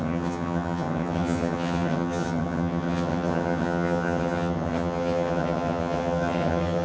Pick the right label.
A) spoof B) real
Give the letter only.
A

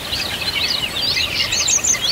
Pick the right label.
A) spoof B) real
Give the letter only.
B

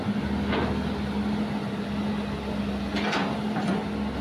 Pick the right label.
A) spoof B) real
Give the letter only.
B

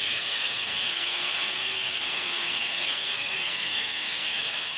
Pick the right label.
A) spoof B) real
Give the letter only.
A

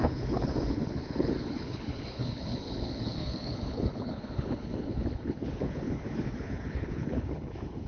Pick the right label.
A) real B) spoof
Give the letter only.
B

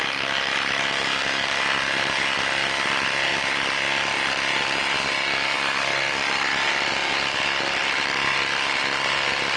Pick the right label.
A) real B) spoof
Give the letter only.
A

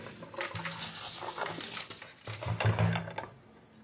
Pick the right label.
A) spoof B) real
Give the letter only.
B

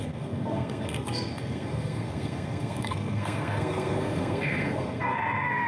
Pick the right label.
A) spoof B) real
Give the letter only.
A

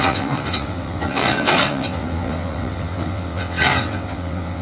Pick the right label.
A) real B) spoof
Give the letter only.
B